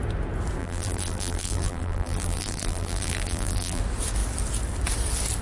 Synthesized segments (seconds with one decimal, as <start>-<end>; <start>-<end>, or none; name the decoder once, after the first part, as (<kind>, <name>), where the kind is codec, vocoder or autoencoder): 0.6-3.8 (vocoder, BigVGAN v2)